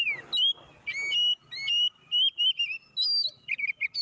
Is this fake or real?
real